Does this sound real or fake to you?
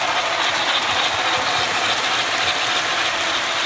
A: real